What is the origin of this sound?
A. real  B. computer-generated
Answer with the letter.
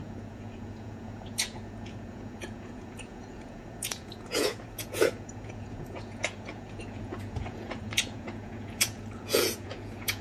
B